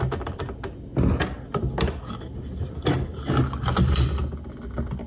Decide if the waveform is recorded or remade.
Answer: recorded